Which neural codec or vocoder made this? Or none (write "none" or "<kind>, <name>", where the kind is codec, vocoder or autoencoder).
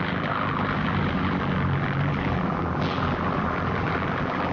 vocoder, BigVGAN v2